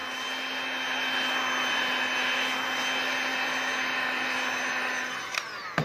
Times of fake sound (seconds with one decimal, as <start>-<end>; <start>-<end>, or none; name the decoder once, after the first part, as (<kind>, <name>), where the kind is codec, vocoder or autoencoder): none